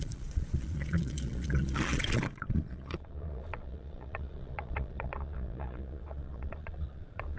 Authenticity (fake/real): fake